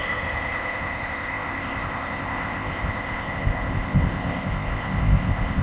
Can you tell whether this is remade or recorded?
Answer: remade